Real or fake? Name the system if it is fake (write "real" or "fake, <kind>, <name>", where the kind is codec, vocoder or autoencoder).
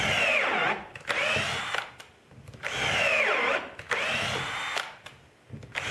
real